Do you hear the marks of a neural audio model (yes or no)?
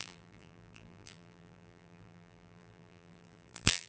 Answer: yes